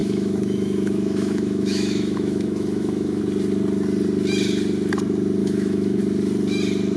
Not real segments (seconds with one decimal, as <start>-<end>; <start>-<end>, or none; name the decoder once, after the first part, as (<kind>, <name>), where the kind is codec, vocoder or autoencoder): 0.0-3.2 (autoencoder, DAC-VAE); 5.4-6.0